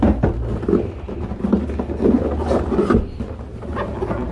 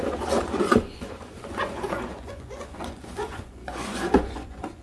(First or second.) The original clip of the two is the first